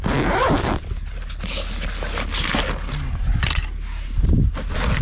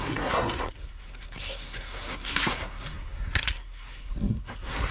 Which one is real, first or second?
first